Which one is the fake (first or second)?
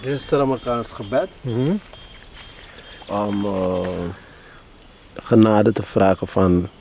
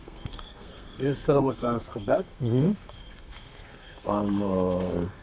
second